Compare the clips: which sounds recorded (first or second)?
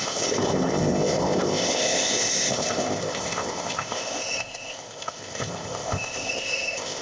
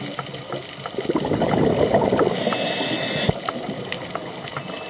second